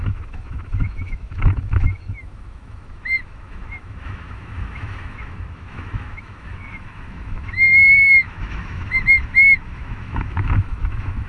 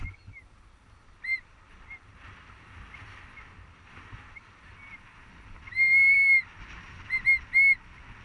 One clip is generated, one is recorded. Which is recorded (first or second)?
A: second